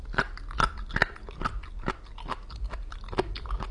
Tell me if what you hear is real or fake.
real